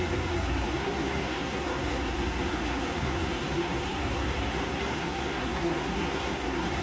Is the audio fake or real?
fake